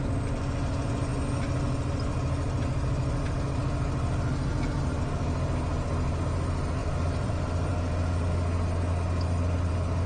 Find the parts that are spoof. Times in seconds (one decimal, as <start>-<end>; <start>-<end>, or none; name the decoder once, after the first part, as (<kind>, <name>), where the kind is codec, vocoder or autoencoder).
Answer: 6.8-7.3 (vocoder, BigVGAN v2)